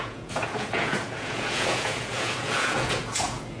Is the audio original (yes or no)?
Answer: no